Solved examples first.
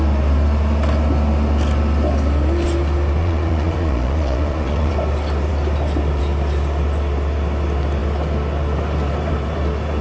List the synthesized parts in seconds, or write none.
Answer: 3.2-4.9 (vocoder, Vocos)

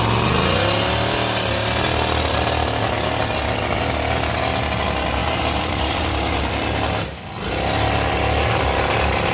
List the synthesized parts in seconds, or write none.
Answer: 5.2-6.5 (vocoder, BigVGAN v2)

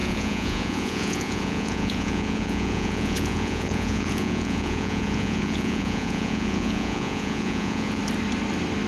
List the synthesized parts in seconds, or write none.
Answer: 0.0-8.0 (vocoder, Vocos)

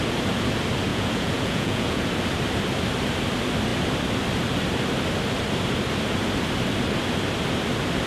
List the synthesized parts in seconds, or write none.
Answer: 0.9-2.1 (vocoder, Vocos)

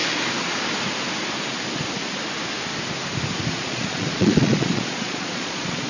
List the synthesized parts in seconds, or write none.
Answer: 3.5-5.9 (vocoder, Vocos)